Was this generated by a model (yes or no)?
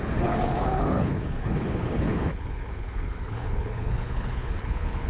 yes